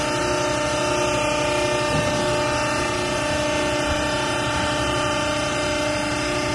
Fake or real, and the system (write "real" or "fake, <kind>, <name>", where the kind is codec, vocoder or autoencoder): real